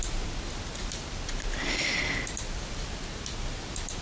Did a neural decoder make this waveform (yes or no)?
no